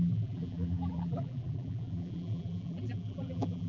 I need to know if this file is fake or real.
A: fake